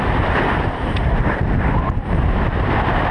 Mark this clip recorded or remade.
remade